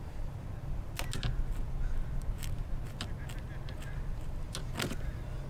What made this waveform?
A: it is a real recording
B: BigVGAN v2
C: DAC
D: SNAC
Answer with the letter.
A